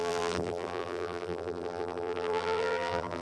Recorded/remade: remade